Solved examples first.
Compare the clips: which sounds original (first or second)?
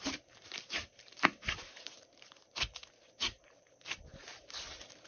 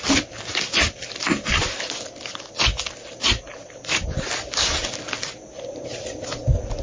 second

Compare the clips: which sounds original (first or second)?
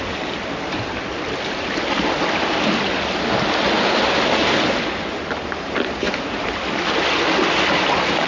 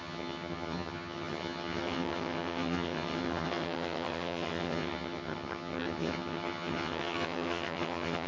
first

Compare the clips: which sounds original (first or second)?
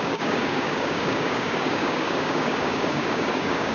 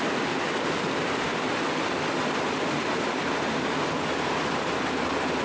second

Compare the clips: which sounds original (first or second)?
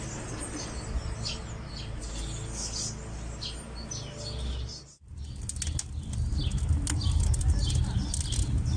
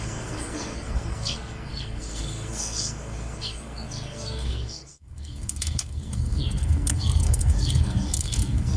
first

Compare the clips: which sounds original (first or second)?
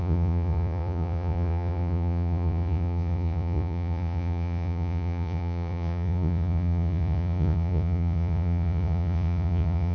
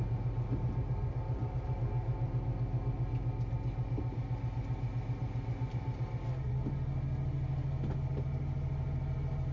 second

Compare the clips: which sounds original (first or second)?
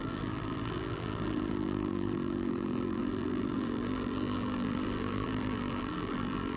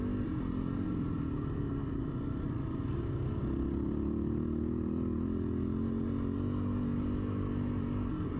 second